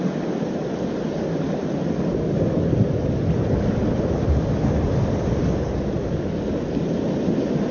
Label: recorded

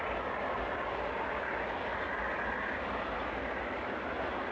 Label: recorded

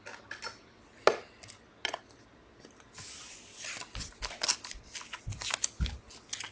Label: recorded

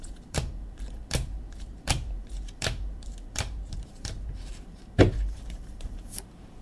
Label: remade